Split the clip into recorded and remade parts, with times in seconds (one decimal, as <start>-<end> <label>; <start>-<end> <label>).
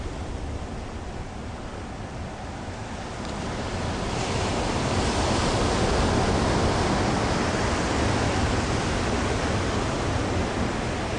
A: 0.0-11.2 recorded